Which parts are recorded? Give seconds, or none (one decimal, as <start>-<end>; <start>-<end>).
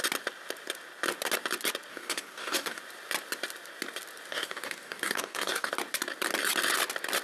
0.0-1.9; 2.8-4.3; 5.7-7.2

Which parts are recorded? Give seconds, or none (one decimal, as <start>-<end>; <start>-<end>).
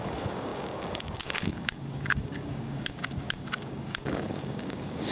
none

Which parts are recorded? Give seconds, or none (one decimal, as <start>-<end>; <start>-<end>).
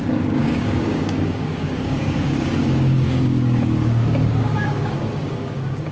none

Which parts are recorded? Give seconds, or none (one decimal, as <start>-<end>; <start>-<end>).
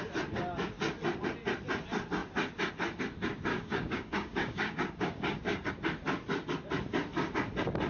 0.0-3.5; 5.7-7.9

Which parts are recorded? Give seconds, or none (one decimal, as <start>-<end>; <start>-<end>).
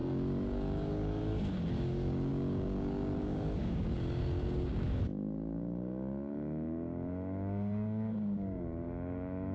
none